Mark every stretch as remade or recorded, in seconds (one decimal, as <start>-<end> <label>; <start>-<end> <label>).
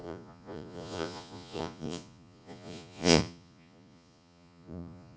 0.0-5.2 remade